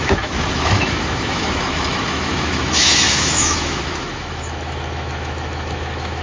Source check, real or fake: fake